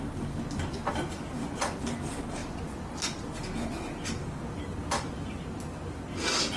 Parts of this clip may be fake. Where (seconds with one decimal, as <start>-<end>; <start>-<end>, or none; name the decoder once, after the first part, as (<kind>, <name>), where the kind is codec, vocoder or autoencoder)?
none